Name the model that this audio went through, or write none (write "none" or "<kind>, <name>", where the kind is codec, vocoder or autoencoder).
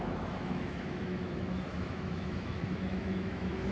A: autoencoder, DAC-VAE